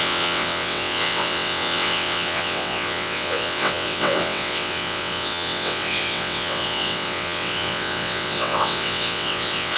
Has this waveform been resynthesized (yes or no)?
yes